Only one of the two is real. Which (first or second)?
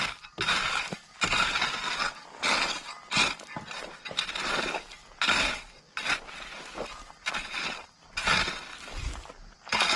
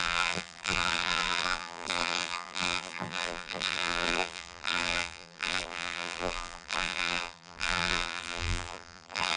first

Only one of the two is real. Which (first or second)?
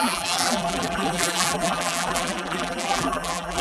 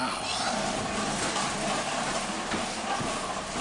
second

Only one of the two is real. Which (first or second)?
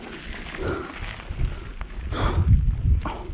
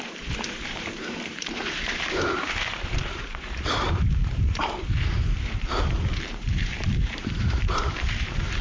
first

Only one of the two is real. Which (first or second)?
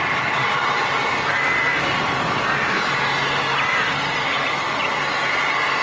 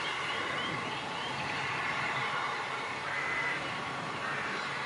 first